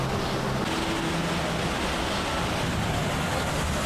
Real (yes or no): yes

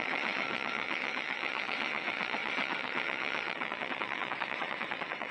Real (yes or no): no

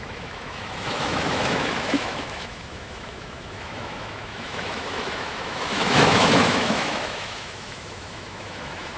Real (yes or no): no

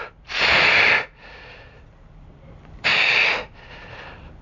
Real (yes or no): yes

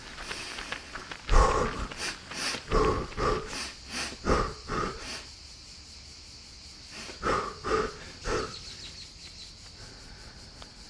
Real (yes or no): yes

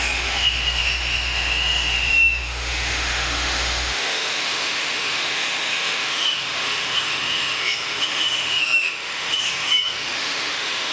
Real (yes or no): no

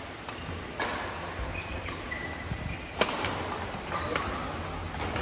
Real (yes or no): yes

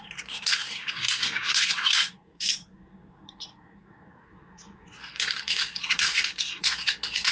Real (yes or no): no